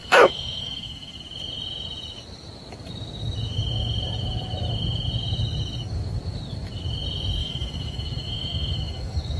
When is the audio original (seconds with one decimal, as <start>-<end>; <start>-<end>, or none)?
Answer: 1.2-7.4